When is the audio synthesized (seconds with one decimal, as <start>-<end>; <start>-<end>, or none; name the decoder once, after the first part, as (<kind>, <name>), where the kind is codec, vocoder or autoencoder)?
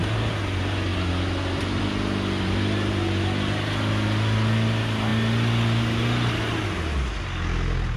none